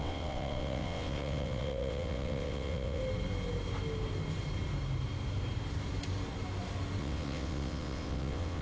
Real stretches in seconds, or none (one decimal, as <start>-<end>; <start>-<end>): 3.0-7.0